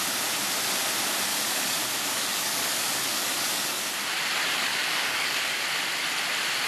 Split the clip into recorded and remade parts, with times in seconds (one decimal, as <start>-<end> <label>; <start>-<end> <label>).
0.0-1.3 recorded; 1.3-3.8 remade; 3.8-4.7 recorded; 4.7-5.6 remade; 5.6-6.7 recorded

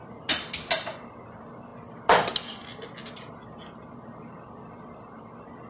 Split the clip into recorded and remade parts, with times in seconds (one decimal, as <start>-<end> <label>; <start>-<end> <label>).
0.0-5.7 recorded

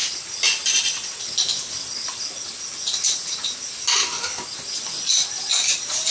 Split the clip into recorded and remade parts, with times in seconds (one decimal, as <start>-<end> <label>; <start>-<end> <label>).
0.0-6.1 recorded